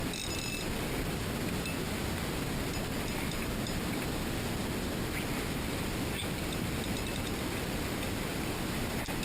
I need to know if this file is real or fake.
real